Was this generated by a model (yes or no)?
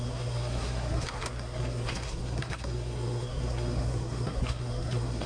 yes